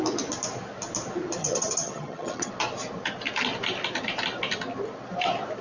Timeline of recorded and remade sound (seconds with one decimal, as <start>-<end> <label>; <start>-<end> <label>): 0.0-1.4 recorded; 1.4-2.5 remade; 2.5-5.6 recorded